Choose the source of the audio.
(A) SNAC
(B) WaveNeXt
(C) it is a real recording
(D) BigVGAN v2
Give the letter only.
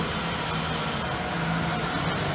C